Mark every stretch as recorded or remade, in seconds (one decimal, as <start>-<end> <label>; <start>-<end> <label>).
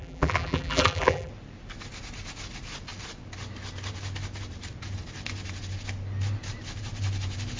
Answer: 0.0-1.3 remade; 1.3-7.6 recorded